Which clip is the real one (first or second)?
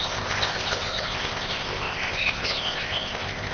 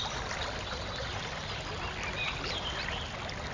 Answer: second